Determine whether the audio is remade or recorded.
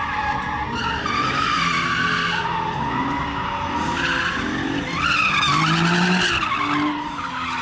recorded